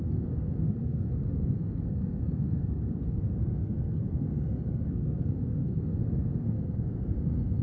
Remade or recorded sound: remade